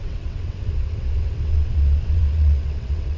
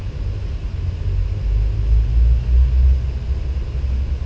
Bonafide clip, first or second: second